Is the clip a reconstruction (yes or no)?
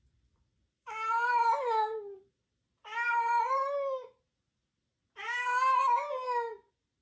no